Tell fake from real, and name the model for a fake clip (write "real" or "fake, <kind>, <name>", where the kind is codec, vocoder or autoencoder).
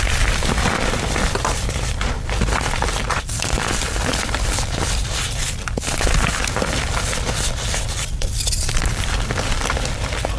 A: fake, vocoder, BigVGAN v2